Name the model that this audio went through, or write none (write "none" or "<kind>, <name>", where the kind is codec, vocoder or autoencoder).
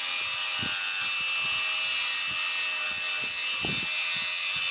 none